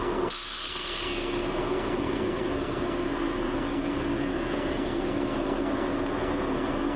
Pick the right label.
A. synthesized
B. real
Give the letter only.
A